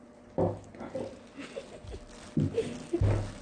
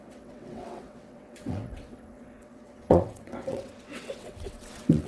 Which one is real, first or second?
first